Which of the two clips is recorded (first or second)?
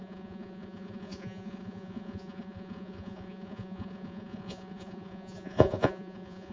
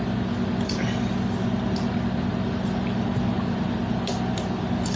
second